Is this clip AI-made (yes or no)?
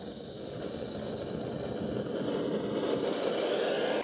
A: no